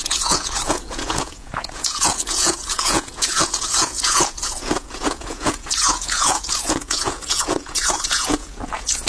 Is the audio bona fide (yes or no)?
no